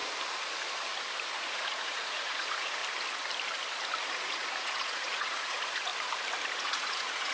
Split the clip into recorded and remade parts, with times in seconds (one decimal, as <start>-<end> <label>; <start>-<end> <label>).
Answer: 0.0-1.2 recorded; 1.2-2.8 remade; 2.8-4.1 recorded; 4.1-5.9 remade; 5.9-6.5 recorded; 6.5-7.3 remade